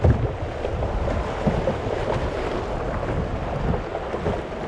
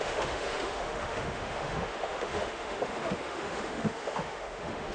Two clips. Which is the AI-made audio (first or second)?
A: second